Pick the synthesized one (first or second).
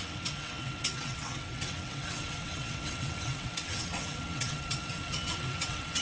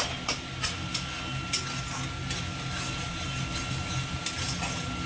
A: first